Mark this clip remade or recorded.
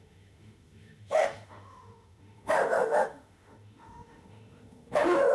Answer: remade